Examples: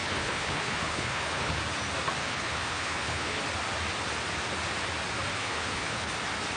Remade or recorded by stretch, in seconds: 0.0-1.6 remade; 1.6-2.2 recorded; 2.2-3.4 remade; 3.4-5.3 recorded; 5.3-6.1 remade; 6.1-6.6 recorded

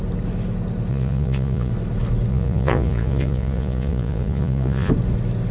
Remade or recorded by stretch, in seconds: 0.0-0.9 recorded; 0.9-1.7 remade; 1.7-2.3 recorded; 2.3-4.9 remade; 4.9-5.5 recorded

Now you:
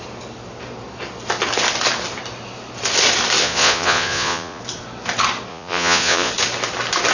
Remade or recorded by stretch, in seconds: 0.0-3.4 recorded; 3.4-4.6 remade; 4.6-5.5 recorded; 5.5-6.3 remade; 6.3-7.1 recorded

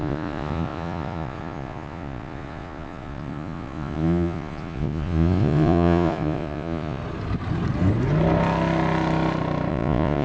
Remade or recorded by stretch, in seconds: 0.0-7.0 remade; 7.0-9.7 recorded; 9.7-10.2 remade

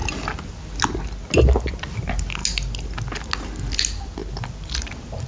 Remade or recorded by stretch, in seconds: 0.0-5.3 recorded

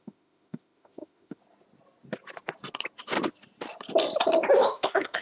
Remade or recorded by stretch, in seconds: 0.0-1.4 remade; 1.4-4.5 recorded; 4.5-5.2 remade